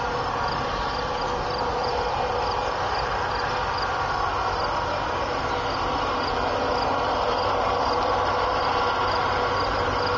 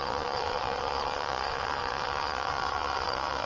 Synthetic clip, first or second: second